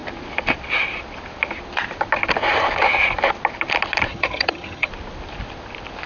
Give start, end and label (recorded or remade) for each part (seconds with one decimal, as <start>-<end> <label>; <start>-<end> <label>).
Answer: 0.0-4.1 recorded; 4.1-4.9 remade; 4.9-6.1 recorded